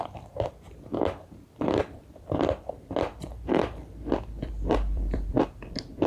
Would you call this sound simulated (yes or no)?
yes